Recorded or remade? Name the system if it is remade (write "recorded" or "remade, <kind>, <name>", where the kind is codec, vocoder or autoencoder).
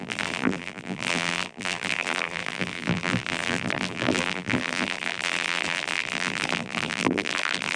remade, vocoder, BigVGAN v2